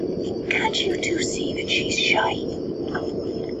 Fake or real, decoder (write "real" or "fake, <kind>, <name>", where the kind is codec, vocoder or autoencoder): fake, vocoder, BigVGAN v2